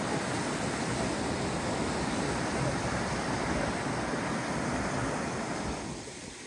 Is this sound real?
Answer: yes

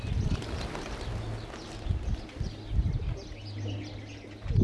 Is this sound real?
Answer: yes